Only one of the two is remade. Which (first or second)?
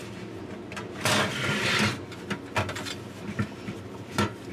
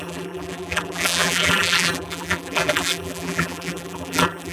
second